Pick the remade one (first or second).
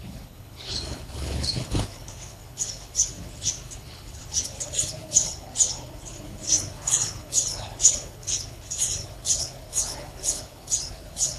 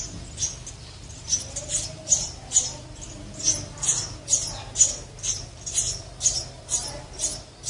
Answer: first